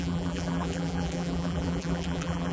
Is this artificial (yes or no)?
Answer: yes